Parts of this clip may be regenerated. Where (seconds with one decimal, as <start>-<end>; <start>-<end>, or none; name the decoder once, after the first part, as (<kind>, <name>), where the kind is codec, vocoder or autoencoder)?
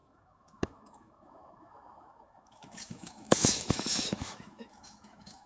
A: 0.0-5.5 (autoencoder, DAC-VAE)